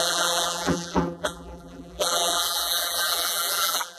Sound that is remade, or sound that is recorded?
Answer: remade